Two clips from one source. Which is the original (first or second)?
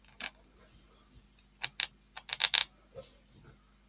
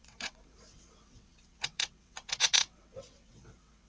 first